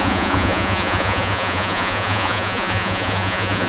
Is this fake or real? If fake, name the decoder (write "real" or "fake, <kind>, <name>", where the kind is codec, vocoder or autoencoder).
fake, vocoder, Vocos